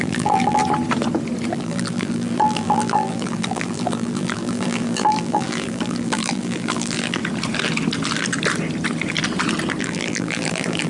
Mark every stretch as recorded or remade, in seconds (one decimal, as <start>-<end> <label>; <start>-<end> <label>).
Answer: 0.0-0.6 remade; 0.6-1.5 recorded; 1.5-7.2 remade; 7.2-9.8 recorded; 9.8-10.9 remade